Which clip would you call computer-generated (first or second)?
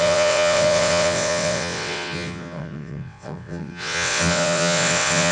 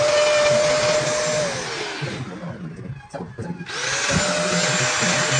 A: first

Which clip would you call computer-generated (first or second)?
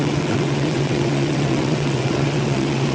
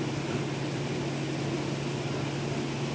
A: first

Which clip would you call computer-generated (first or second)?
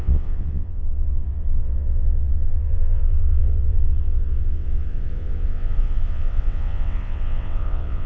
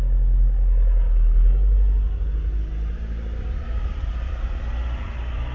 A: first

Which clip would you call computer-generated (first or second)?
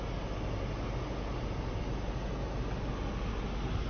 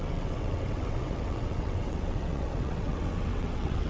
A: second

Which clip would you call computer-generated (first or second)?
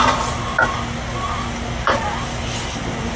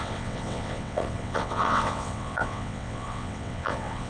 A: second